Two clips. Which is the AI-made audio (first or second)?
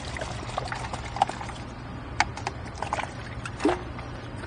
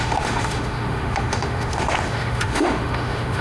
second